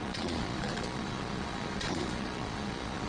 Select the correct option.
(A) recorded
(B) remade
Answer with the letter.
B